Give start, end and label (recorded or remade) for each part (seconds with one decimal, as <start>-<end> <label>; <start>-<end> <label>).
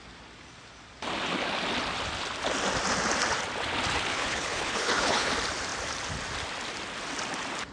0.0-4.1 recorded; 4.1-5.3 remade; 5.3-7.7 recorded